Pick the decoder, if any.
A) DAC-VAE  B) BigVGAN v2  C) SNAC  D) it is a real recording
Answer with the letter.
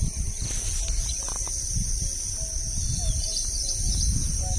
D